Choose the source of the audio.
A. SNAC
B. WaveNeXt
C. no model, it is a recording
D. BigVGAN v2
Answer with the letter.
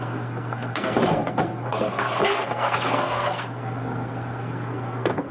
A